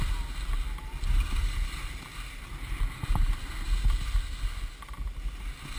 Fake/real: real